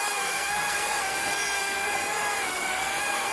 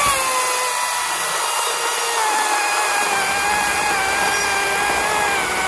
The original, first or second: second